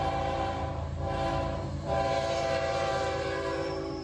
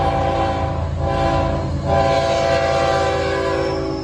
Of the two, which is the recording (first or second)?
second